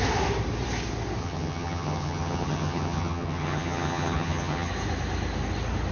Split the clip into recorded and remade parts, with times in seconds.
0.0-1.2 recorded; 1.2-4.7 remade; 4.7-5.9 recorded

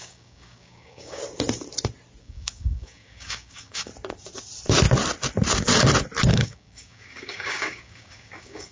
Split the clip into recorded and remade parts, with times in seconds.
0.0-1.2 remade; 1.2-2.2 recorded; 2.2-3.9 remade; 3.9-6.3 recorded; 6.3-8.7 remade

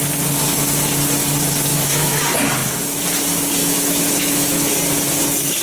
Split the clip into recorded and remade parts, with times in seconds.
0.0-1.7 recorded; 1.7-2.2 remade; 2.2-3.6 recorded; 3.6-4.7 remade; 4.7-5.6 recorded

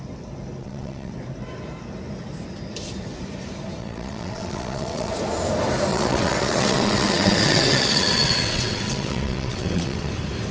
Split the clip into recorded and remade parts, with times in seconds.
0.0-0.6 recorded; 0.6-1.1 remade; 1.1-3.8 recorded; 3.8-5.1 remade; 5.1-5.9 recorded; 5.9-10.1 remade; 10.1-10.5 recorded

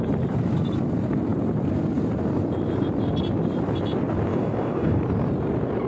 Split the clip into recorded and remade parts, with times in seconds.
0.0-4.3 recorded; 4.3-5.0 remade; 5.0-5.9 recorded

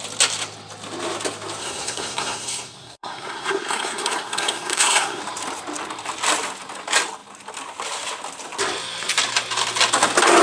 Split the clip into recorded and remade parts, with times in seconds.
0.0-1.6 recorded; 1.6-5.2 remade; 5.2-10.4 recorded

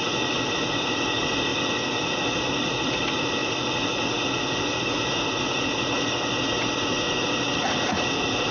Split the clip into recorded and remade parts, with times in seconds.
0.0-8.5 remade